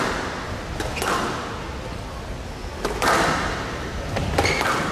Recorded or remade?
recorded